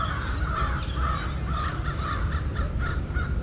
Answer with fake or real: real